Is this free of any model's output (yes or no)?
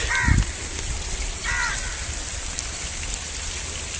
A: yes